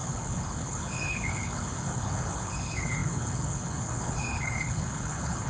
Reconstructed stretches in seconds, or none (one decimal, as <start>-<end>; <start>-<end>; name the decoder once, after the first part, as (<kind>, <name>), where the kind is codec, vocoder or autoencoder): 0.0-5.5 (codec, HILCodec)